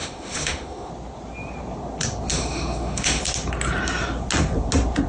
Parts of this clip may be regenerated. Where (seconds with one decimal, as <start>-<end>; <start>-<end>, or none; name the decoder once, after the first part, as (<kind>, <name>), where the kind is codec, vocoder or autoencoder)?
0.0-0.9 (autoencoder, DAC-VAE); 2.3-3.2